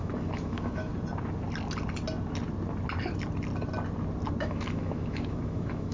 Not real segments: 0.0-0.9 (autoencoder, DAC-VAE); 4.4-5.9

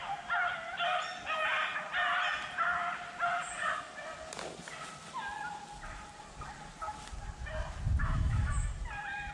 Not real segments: 8.0-8.7 (autoencoder, DAC-VAE)

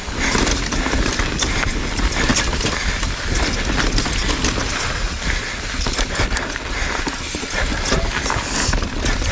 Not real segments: 0.0-4.2 (vocoder, BigVGAN v2); 5.6-9.3